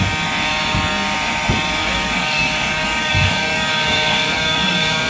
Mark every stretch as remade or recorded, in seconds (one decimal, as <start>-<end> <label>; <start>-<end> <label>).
0.0-1.8 recorded; 1.8-5.1 remade